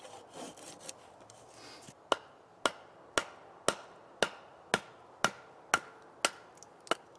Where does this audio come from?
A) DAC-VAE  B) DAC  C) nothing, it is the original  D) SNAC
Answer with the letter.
C